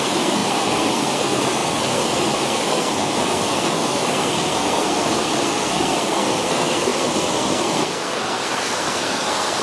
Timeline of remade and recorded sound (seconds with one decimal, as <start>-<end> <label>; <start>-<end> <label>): 0.0-9.6 remade